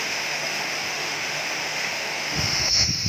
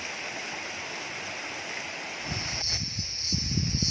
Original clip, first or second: second